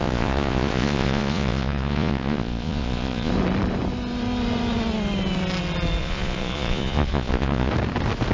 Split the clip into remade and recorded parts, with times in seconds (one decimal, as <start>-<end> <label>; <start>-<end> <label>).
0.0-3.3 remade; 3.3-6.0 recorded; 6.0-7.7 remade; 7.7-8.3 recorded

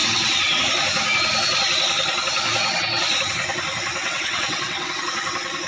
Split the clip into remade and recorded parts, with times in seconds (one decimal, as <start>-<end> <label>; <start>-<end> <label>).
0.0-0.6 remade; 0.6-4.0 recorded; 4.0-5.0 remade; 5.0-5.7 recorded

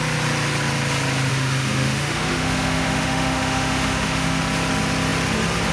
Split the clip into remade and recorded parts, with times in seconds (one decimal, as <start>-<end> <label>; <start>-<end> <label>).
0.0-1.3 recorded; 1.3-4.4 remade; 4.4-5.7 recorded

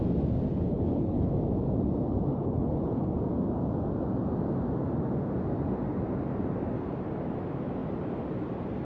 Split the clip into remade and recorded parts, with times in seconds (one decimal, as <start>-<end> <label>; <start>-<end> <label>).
0.0-0.5 recorded; 0.5-1.3 remade; 1.3-2.3 recorded; 2.3-3.1 remade; 3.1-8.8 recorded

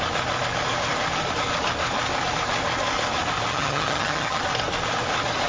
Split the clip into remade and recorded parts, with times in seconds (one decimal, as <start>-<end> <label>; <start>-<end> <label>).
0.0-3.5 recorded; 3.5-4.4 remade; 4.4-5.5 recorded

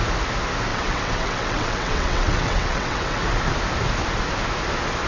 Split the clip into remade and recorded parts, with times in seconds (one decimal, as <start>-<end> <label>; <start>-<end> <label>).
0.0-0.7 recorded; 0.7-3.2 remade; 3.2-5.1 recorded

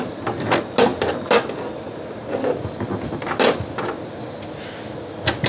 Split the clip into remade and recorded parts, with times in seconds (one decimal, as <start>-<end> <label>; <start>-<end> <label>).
0.0-5.5 recorded

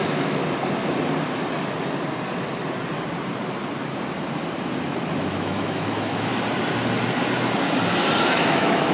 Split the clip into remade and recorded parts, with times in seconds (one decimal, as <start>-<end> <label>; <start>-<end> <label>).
0.0-0.4 remade; 0.4-5.3 recorded; 5.3-6.3 remade; 6.3-8.2 recorded; 8.2-8.9 remade